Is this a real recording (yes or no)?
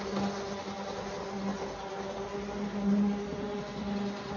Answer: yes